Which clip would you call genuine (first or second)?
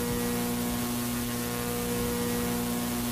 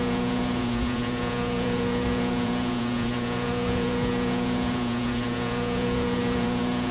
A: first